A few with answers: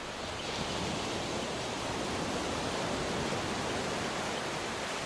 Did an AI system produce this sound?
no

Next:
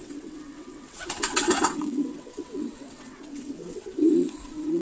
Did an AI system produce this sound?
yes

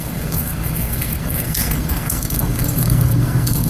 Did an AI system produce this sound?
yes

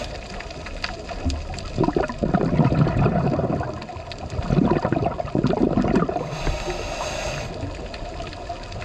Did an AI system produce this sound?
no